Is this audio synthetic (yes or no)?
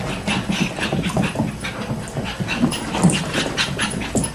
no